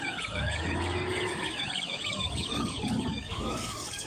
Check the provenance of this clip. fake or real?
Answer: fake